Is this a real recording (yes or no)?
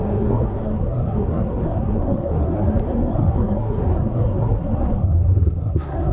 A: no